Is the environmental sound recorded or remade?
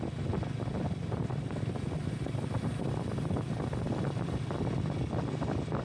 recorded